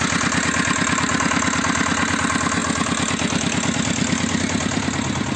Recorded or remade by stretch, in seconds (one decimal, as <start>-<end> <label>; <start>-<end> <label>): 0.0-5.4 recorded